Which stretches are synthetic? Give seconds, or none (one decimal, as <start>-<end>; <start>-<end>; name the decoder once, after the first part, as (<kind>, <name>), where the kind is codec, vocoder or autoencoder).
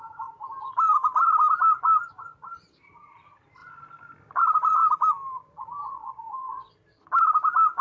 5.8-6.7 (vocoder, Vocos)